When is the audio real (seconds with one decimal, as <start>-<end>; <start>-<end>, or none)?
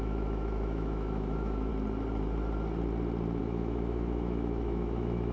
1.7-3.4